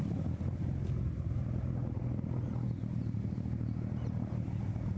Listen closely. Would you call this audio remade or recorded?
recorded